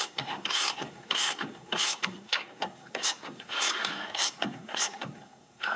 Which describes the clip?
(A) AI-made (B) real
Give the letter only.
A